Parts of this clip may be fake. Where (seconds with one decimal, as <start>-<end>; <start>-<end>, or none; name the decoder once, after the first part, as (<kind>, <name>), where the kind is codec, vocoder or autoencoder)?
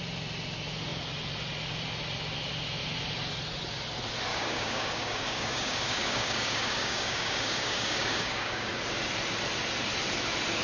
4.3-8.7 (codec, DAC)